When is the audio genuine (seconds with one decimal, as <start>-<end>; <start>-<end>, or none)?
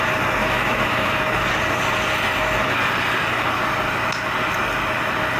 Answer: 0.0-0.4; 1.1-5.4